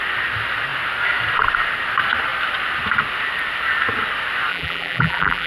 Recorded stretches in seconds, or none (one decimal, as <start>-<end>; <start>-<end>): 0.0-4.5